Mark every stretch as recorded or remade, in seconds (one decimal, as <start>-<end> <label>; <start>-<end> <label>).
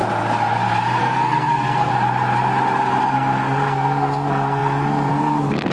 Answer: 0.0-1.0 recorded; 1.0-1.9 remade; 1.9-3.0 recorded; 3.0-5.7 remade